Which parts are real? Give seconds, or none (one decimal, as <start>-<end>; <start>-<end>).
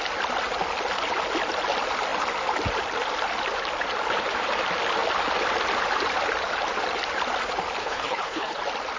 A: 0.0-7.8; 8.6-9.0